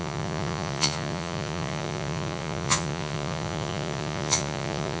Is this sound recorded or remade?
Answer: remade